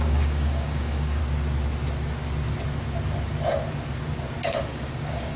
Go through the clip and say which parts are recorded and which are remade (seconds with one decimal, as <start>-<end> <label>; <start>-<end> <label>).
0.0-1.2 remade; 1.2-4.4 recorded; 4.4-5.4 remade